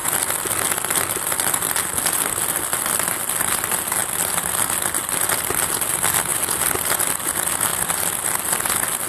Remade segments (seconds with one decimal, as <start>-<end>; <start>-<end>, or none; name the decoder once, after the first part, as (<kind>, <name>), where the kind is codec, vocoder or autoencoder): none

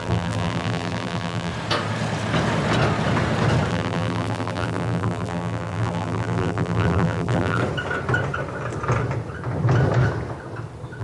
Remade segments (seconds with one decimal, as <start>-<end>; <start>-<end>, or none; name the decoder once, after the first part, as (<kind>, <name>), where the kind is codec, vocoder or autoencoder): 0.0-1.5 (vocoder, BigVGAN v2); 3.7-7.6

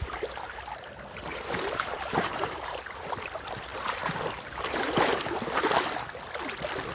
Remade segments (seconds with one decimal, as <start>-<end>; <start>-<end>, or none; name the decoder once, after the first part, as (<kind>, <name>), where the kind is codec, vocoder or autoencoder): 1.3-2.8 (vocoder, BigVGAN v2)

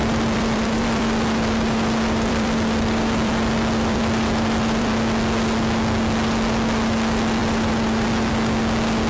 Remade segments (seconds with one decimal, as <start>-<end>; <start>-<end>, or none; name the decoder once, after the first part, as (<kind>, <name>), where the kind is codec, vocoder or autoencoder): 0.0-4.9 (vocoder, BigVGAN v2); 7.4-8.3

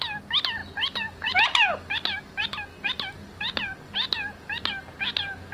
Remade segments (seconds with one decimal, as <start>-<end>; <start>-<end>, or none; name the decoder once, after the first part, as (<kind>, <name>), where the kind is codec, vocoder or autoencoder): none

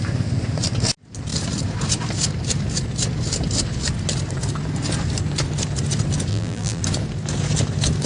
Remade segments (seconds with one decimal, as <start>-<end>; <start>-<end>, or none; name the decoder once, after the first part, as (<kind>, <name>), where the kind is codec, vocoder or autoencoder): 6.3-6.8 (vocoder, BigVGAN v2)

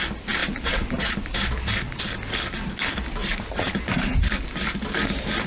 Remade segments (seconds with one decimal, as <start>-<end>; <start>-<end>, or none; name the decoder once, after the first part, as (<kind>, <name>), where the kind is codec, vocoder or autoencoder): 0.4-2.0 (vocoder, BigVGAN v2); 3.2-4.1

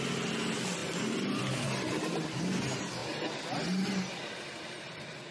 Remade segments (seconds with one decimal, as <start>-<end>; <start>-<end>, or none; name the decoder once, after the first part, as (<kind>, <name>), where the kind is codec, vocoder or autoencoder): none